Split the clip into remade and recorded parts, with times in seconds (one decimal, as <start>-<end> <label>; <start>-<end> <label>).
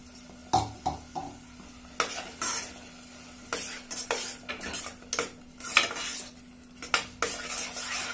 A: 0.0-8.1 recorded